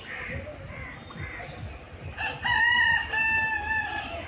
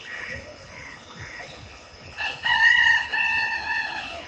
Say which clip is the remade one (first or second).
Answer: second